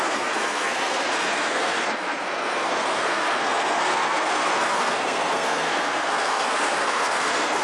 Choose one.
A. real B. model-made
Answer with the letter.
B